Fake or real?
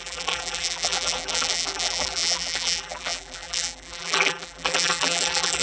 fake